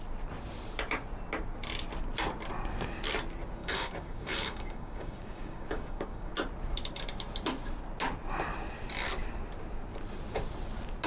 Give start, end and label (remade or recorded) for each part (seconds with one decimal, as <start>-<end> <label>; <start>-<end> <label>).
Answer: 0.0-3.6 recorded; 3.6-6.3 remade; 6.3-11.1 recorded